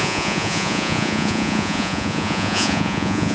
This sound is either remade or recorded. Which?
remade